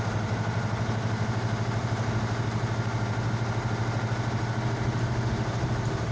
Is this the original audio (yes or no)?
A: yes